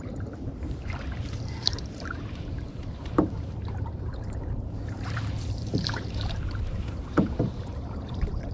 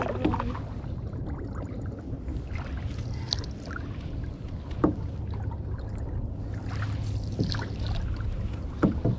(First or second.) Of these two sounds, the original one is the second